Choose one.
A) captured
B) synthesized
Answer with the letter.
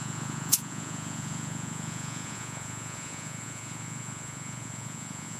B